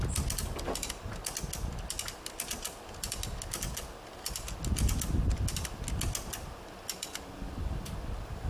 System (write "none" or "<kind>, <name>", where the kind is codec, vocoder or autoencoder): none